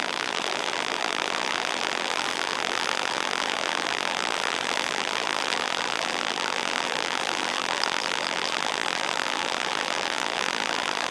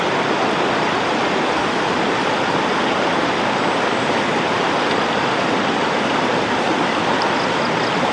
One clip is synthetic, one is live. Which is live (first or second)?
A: second